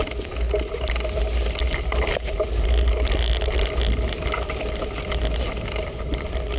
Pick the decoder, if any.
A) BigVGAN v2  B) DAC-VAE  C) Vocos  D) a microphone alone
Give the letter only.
D